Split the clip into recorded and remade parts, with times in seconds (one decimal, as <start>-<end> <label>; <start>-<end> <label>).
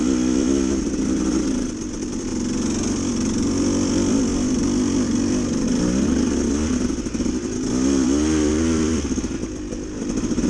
0.0-2.3 remade; 2.3-3.1 recorded; 3.1-6.9 remade; 6.9-8.5 recorded; 8.5-10.5 remade